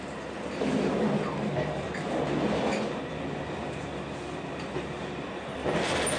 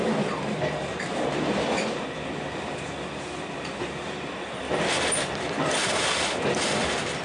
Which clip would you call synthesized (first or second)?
second